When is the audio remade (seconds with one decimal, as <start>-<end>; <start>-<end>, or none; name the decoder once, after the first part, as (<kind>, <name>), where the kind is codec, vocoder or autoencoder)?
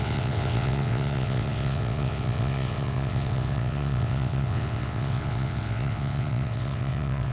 0.0-7.3 (vocoder, WaveNeXt)